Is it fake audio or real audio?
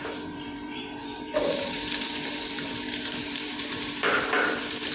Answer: fake